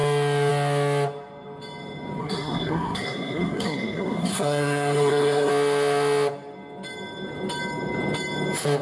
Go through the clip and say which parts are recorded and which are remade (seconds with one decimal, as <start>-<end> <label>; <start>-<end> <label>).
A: 0.0-2.2 recorded; 2.2-5.5 remade; 5.5-8.8 recorded